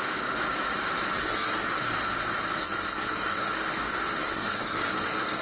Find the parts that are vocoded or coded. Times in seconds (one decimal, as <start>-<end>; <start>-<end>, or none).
1.2-1.7; 2.6-3.5; 4.2-5.4